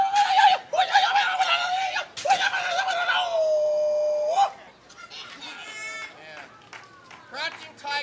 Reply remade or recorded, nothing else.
recorded